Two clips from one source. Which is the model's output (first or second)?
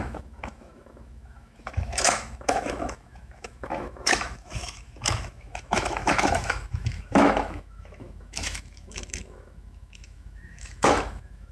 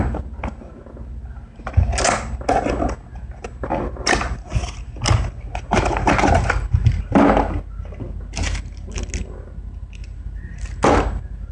first